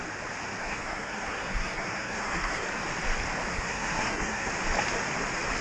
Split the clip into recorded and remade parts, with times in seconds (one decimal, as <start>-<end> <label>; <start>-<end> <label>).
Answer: 0.0-0.6 recorded; 0.6-2.7 remade; 2.7-3.5 recorded; 3.5-4.5 remade; 4.5-5.6 recorded